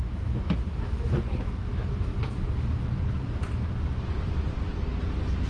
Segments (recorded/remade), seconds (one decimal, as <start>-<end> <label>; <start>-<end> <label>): 0.0-2.1 remade; 2.1-5.5 recorded